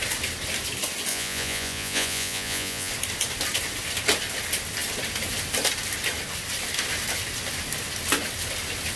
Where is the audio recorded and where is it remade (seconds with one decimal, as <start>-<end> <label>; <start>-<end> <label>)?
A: 0.0-1.1 recorded; 1.1-2.9 remade; 2.9-9.0 recorded